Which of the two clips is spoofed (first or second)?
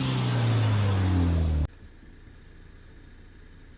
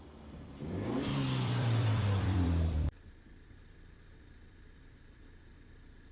second